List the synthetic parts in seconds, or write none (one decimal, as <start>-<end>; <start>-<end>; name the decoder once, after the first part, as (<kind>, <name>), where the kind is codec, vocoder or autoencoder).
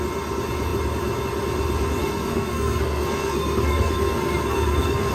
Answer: 2.0-5.1 (codec, SNAC)